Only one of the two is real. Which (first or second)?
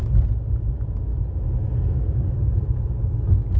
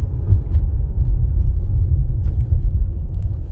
first